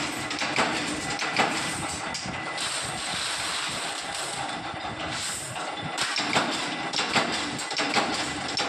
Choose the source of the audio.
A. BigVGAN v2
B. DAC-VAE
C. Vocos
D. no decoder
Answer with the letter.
D